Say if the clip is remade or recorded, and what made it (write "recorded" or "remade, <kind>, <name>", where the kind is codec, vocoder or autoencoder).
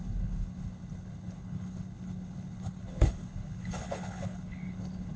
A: remade, codec, HILCodec